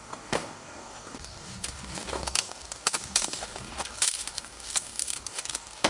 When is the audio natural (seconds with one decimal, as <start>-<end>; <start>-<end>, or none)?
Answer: none